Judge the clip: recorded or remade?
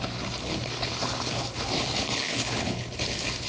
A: remade